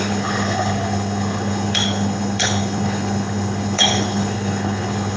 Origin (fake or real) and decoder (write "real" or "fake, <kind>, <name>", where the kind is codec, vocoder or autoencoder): fake, codec, HILCodec